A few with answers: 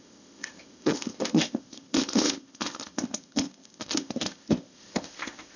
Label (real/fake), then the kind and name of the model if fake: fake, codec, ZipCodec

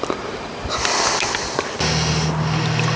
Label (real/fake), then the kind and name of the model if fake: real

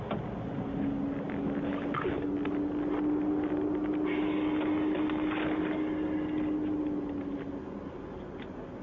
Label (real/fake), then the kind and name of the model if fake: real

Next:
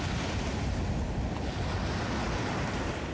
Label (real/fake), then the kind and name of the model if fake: real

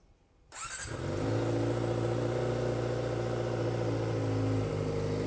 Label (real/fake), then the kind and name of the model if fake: real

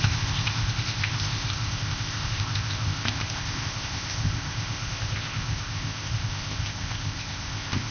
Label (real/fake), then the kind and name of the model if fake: fake, codec, ZipCodec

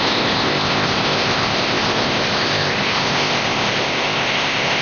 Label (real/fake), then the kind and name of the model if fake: fake, codec, ZipCodec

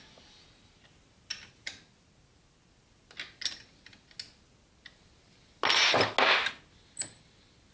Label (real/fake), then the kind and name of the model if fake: real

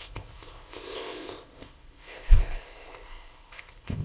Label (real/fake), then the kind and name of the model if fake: fake, codec, ZipCodec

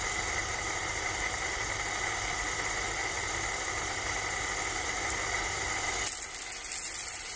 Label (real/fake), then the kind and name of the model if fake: real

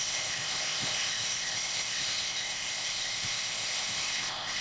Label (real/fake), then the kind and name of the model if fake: fake, codec, ZipCodec